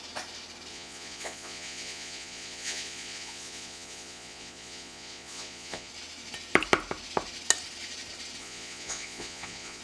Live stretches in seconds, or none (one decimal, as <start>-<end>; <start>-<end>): 0.0-0.7; 5.9-8.4